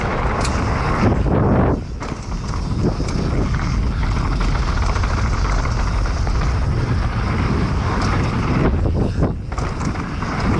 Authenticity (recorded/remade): recorded